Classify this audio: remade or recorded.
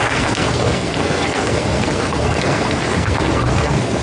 remade